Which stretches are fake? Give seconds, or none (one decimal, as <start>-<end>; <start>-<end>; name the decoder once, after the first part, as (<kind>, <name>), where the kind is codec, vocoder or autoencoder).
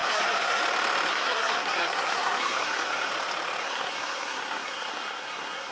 0.0-0.6 (codec, SNAC); 1.1-3.1; 3.6-5.7